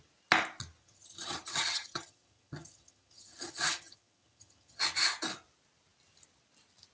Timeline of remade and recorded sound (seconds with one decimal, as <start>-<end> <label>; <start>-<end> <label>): 0.0-0.8 recorded; 0.8-4.8 remade; 4.8-6.9 recorded